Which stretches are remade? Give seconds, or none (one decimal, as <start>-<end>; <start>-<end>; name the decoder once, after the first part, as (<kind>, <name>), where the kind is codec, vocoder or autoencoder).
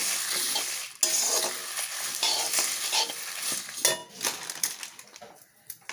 none